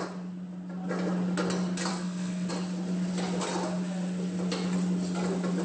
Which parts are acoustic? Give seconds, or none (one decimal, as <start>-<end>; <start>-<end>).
0.0-1.9; 2.5-5.6